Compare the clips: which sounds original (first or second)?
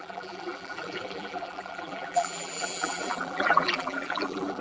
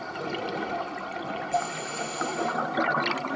second